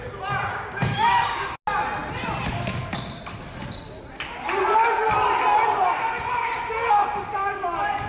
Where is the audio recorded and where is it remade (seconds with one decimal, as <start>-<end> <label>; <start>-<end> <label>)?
0.0-0.5 recorded; 0.5-1.6 remade; 1.6-8.1 recorded